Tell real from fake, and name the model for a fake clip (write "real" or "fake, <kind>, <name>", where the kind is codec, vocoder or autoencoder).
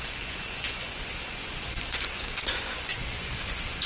fake, vocoder, Vocos